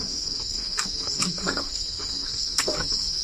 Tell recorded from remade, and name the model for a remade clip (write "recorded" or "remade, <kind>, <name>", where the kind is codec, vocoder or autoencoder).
remade, codec, SNAC